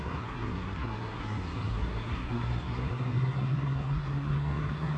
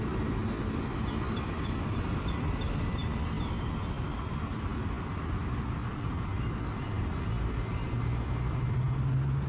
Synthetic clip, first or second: first